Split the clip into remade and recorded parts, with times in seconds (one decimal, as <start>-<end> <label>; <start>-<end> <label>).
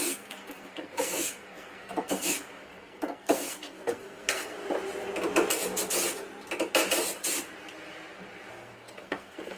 0.0-4.6 remade; 4.6-8.5 recorded; 8.5-9.6 remade